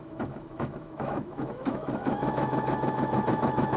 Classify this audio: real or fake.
fake